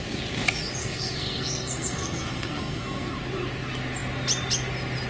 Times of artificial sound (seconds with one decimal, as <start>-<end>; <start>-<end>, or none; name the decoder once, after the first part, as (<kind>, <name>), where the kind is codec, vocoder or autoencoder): 0.8-3.1 (codec, SNAC)